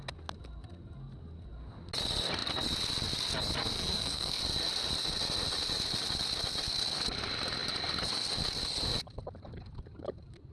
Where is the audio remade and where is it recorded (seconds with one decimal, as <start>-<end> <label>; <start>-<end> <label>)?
0.0-3.6 recorded; 3.6-4.4 remade; 4.4-10.5 recorded